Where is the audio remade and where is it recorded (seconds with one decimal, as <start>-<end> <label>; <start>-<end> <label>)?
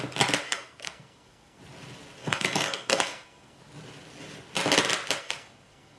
0.0-0.4 recorded; 0.4-1.6 remade; 1.6-2.2 recorded; 2.2-3.6 remade; 3.6-5.2 recorded; 5.2-6.0 remade